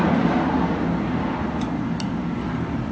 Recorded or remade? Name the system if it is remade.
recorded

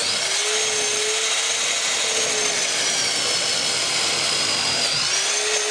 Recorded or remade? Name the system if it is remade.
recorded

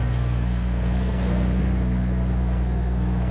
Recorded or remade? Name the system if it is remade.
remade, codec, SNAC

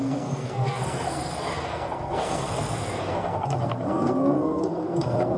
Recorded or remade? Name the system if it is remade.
remade, codec, SNAC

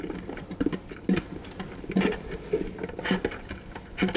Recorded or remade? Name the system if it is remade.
recorded